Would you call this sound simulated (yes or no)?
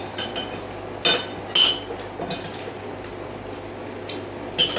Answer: no